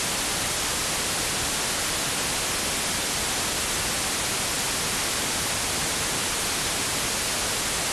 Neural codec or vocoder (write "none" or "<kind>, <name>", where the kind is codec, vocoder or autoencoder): none